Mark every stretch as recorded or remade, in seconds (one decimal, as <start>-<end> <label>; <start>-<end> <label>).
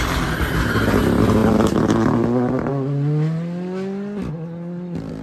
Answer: 0.0-5.2 recorded